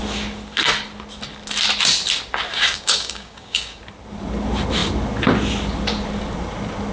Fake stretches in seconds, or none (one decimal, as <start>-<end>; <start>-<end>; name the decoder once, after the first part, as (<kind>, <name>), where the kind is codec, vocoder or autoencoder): 2.5-3.8 (codec, DAC)